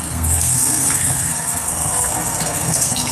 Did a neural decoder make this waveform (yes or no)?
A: yes